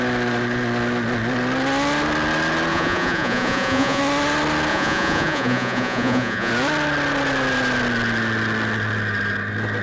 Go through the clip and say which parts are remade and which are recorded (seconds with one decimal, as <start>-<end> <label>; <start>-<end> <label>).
0.0-2.7 recorded; 2.7-4.0 remade; 4.0-4.7 recorded; 4.7-6.5 remade; 6.5-9.8 recorded

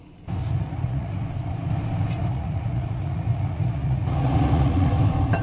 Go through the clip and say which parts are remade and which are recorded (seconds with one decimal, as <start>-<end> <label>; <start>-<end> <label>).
0.0-0.4 recorded; 0.4-1.1 remade; 1.1-2.2 recorded; 2.2-4.9 remade; 4.9-5.4 recorded

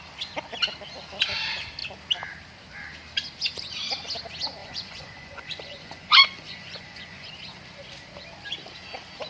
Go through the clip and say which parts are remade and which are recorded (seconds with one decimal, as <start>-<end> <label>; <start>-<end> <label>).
0.0-4.6 recorded; 4.6-7.3 remade; 7.3-9.3 recorded

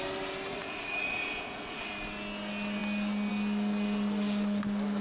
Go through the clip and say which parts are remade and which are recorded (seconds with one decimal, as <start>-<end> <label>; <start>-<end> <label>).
0.0-0.5 recorded; 0.5-1.9 remade; 1.9-5.0 recorded